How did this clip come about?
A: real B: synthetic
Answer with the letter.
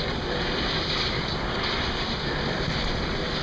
B